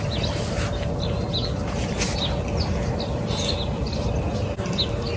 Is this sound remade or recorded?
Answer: recorded